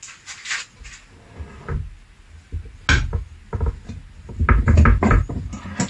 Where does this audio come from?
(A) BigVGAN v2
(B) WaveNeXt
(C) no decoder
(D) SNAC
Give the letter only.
C